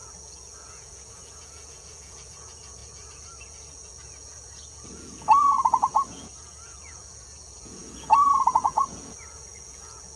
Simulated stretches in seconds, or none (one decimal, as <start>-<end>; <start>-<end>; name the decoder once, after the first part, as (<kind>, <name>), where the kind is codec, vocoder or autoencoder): 0.0-10.2 (vocoder, Vocos)